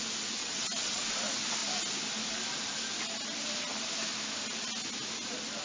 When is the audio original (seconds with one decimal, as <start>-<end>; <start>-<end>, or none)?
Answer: 0.0-0.4; 1.0-5.6